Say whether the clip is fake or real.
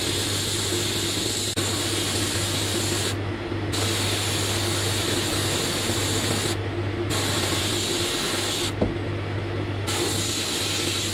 real